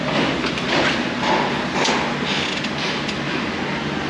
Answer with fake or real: real